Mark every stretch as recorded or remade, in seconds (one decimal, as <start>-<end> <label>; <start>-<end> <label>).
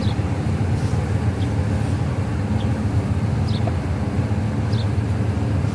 0.0-0.9 remade; 0.9-5.7 recorded